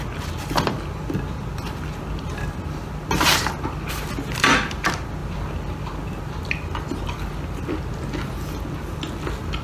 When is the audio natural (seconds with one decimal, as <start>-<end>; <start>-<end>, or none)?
0.0-9.6